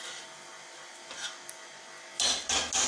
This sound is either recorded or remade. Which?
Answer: recorded